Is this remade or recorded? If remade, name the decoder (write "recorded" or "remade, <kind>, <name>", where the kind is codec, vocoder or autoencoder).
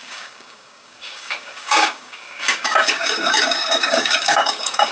remade, codec, DAC